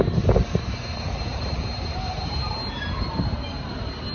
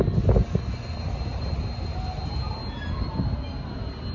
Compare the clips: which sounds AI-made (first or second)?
first